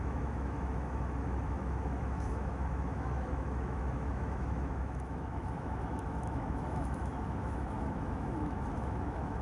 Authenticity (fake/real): fake